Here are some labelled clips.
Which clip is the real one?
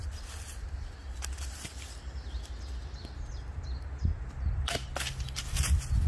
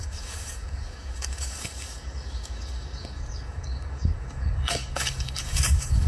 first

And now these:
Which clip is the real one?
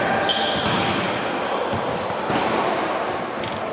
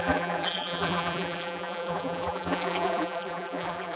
first